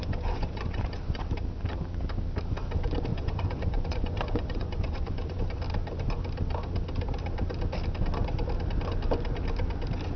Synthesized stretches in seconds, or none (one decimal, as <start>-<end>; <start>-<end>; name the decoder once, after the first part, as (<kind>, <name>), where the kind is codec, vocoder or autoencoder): 0.0-1.2 (vocoder, Vocos); 3.1-5.4